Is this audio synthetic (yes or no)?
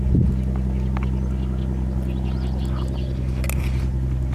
no